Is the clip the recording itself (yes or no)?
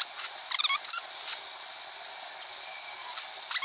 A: yes